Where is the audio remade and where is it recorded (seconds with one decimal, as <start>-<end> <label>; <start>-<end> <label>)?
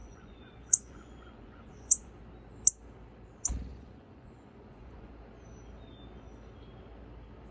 0.0-2.1 remade; 2.1-3.7 recorded; 3.7-5.1 remade; 5.1-7.5 recorded